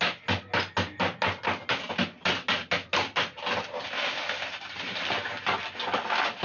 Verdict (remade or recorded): recorded